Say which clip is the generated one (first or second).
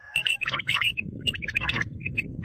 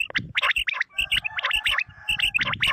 first